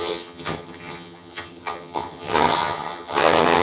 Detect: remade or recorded remade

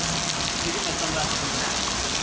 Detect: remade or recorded recorded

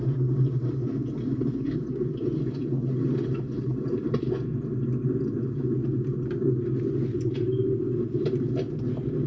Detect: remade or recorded recorded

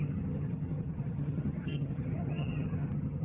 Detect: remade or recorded remade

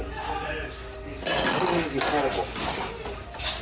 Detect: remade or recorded recorded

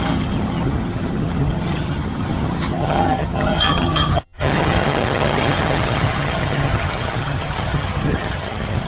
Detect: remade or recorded remade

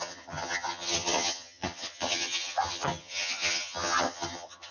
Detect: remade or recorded remade